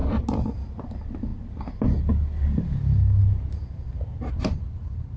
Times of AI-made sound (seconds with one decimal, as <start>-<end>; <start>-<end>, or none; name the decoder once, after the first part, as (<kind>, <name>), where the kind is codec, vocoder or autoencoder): none